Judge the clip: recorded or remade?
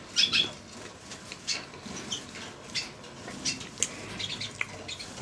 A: recorded